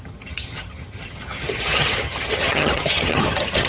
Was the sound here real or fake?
fake